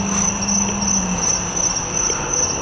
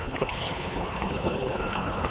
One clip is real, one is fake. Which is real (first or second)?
first